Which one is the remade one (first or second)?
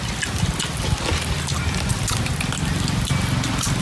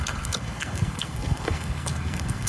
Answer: second